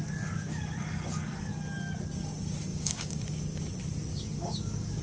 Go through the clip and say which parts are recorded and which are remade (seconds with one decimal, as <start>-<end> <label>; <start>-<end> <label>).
0.0-2.7 recorded; 2.7-3.6 remade; 3.6-4.1 recorded; 4.1-5.0 remade